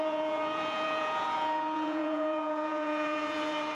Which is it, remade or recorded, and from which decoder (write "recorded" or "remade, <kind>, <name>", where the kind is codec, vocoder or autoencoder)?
remade, vocoder, Vocos